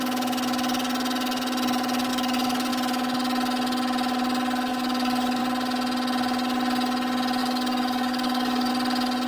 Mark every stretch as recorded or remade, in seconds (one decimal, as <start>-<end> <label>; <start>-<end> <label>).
0.0-2.1 recorded; 2.1-2.7 remade; 2.7-4.7 recorded; 4.7-5.4 remade; 5.4-7.4 recorded; 7.4-8.7 remade; 8.7-9.3 recorded